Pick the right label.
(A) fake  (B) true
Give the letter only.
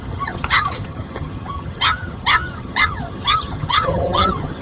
A